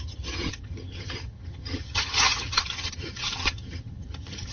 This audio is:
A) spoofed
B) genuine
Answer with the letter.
A